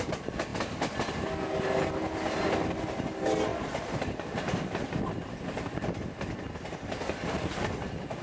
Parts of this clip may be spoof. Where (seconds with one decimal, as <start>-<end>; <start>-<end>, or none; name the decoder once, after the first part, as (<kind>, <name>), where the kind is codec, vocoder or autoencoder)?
3.5-6.4 (vocoder, BigVGAN v2)